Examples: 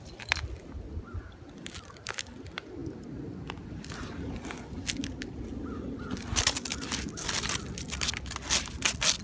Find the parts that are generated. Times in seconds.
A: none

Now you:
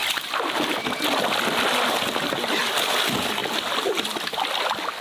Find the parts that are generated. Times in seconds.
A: 0.0-2.6; 3.4-4.5